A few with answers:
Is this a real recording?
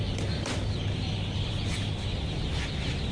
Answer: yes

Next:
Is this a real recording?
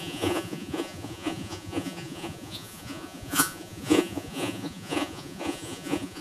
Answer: no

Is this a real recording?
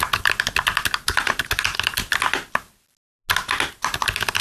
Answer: yes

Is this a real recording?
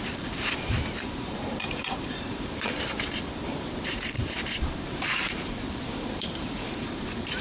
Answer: no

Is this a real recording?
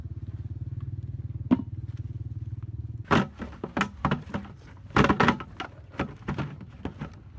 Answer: yes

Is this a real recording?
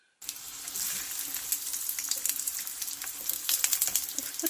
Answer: yes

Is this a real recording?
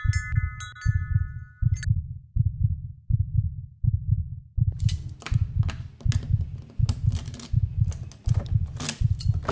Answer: yes